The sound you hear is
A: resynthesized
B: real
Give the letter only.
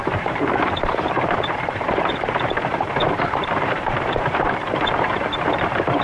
A